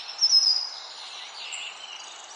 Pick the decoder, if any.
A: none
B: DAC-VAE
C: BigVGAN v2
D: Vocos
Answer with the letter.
A